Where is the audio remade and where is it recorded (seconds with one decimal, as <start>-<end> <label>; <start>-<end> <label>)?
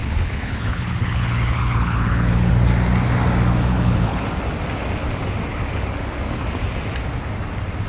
0.0-2.5 remade; 2.5-3.7 recorded; 3.7-4.2 remade; 4.2-7.9 recorded